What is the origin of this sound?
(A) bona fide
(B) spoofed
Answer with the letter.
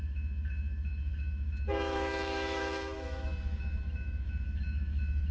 B